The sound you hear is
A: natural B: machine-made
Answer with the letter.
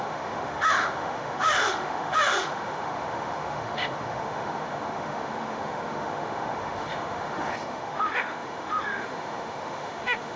B